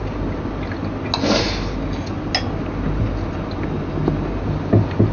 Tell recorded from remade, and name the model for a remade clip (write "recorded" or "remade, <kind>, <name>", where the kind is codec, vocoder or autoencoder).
recorded